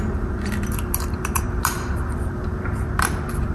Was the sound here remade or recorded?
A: remade